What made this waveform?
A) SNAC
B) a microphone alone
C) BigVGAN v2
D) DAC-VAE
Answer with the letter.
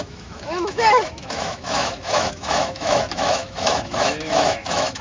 D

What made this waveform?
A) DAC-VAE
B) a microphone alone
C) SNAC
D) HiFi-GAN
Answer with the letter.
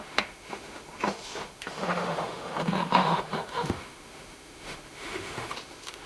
A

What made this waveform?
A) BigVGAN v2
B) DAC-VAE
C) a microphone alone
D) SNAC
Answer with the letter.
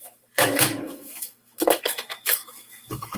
B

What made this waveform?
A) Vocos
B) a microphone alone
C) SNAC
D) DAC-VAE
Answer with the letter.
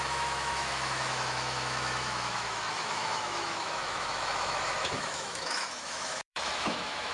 D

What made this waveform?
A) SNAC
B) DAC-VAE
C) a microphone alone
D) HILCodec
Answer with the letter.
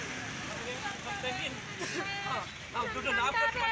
C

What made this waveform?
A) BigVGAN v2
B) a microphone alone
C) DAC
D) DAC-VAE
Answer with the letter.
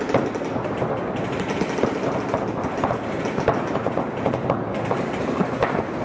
B